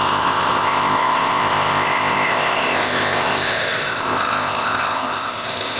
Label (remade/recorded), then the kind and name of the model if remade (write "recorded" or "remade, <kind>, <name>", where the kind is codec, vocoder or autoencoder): remade, codec, ZipCodec